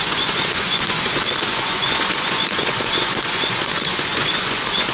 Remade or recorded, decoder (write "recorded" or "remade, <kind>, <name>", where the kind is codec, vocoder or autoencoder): remade, vocoder, Vocos